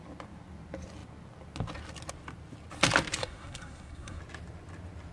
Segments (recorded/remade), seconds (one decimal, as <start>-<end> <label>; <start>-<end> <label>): 0.0-3.2 recorded; 3.2-4.2 remade; 4.2-5.1 recorded